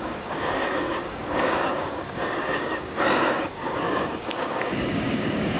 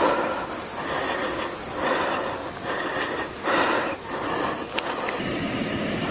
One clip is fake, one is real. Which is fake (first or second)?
first